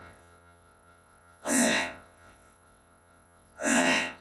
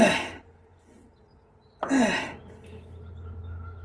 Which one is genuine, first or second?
second